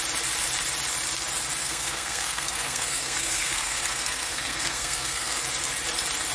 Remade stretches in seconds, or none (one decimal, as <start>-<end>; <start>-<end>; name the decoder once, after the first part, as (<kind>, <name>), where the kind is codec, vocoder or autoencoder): 1.6-5.4 (codec, SNAC)